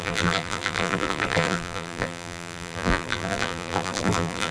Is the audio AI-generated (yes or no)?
yes